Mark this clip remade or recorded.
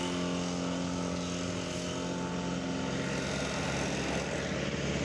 recorded